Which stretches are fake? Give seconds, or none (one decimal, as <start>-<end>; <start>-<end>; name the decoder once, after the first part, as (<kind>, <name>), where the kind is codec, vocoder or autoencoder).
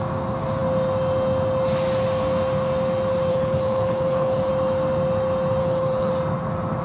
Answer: 3.3-4.5 (codec, HILCodec); 5.6-6.1